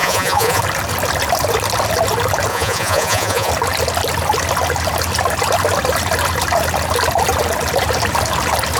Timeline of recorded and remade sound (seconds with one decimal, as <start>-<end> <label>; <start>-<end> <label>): 0.0-0.6 remade; 0.6-2.5 recorded; 2.5-3.5 remade; 3.5-8.8 recorded